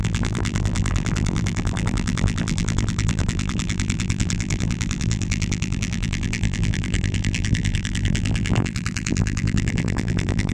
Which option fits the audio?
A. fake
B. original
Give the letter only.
A